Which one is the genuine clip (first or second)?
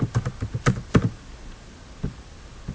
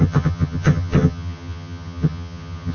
first